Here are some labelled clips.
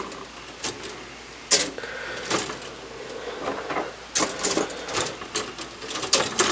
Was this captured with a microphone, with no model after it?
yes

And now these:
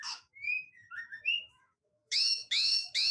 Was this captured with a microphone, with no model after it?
no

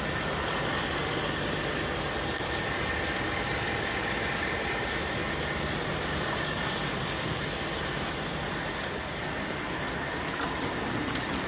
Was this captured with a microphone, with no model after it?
yes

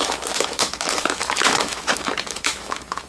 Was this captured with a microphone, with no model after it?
no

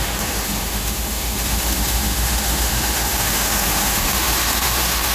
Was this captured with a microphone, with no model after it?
no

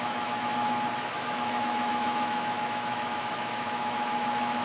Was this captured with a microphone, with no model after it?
no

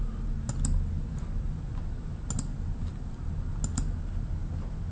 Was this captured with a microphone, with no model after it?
yes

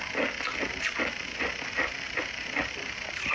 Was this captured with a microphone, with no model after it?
yes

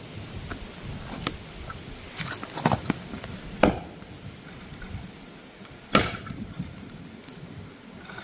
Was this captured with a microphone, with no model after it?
yes